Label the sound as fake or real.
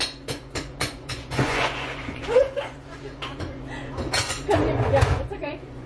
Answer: fake